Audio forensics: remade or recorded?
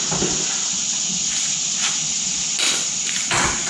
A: recorded